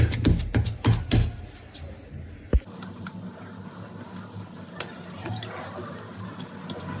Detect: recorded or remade recorded